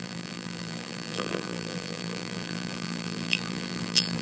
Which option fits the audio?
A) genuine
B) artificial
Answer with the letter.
B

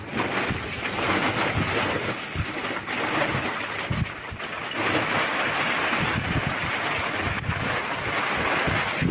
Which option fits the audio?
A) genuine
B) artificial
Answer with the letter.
A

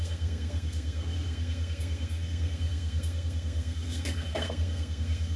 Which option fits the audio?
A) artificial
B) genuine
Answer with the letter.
A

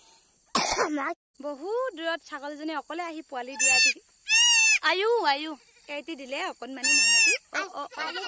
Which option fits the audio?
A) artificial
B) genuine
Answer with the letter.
B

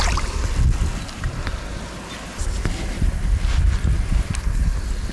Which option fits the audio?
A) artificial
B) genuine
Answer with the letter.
B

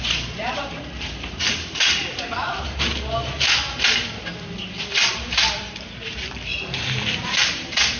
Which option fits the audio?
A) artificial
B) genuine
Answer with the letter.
A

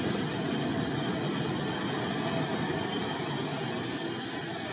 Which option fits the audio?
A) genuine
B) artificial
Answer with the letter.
A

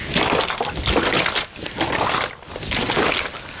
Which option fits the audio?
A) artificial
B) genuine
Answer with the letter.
B